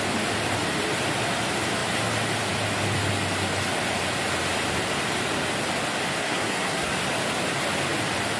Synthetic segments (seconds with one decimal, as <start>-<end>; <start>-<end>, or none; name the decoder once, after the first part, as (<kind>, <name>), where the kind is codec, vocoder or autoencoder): 6.2-6.9 (codec, SNAC)